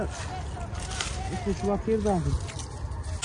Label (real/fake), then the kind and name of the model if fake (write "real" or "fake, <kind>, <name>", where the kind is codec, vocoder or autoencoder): real